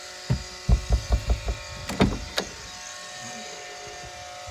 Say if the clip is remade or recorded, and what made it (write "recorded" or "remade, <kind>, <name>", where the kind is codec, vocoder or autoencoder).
recorded